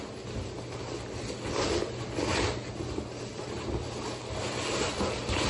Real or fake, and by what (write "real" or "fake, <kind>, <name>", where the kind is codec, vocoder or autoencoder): real